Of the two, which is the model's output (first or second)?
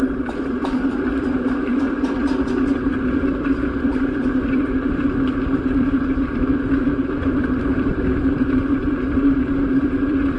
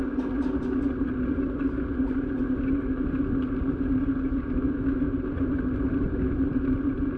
first